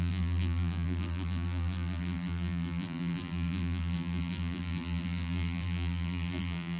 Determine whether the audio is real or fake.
fake